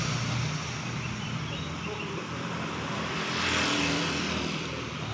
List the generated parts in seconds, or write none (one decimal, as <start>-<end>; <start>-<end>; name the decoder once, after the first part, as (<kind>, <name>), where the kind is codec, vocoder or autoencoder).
2.0-5.1 (vocoder, BigVGAN v2)